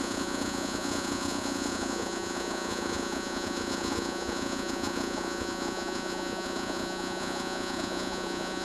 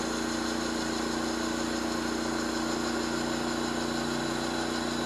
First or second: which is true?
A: second